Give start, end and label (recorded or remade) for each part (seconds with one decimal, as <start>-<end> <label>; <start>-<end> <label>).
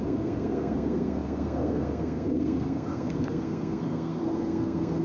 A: 0.0-5.0 remade